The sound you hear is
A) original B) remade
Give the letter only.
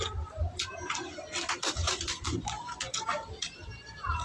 B